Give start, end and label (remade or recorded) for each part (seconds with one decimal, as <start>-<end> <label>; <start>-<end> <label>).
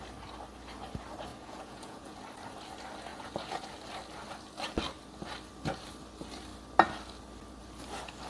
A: 0.0-1.3 recorded; 1.3-2.2 remade; 2.2-3.1 recorded; 3.1-3.7 remade; 3.7-8.3 recorded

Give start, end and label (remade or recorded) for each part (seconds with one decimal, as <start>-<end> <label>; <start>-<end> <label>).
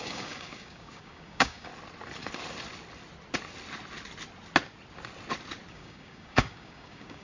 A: 0.0-1.7 remade; 1.7-5.7 recorded; 5.7-7.2 remade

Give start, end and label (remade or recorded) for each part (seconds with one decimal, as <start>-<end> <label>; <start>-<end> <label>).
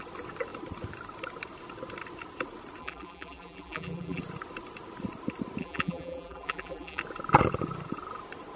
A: 0.0-2.8 recorded; 2.8-4.2 remade; 4.2-5.6 recorded; 5.6-7.0 remade; 7.0-8.6 recorded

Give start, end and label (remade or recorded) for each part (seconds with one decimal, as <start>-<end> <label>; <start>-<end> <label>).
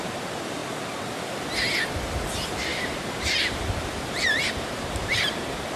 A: 0.0-2.7 recorded; 2.7-5.8 remade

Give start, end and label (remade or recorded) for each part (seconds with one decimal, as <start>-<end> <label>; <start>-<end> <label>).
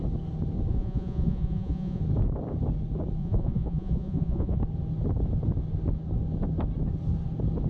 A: 0.0-0.7 recorded; 0.7-2.0 remade; 2.0-3.2 recorded; 3.2-4.6 remade; 4.6-7.7 recorded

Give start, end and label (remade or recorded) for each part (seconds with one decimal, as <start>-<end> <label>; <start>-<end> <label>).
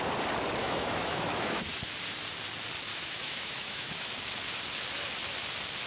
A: 0.0-0.6 recorded; 0.6-1.7 remade; 1.7-2.9 recorded; 2.9-4.1 remade; 4.1-5.9 recorded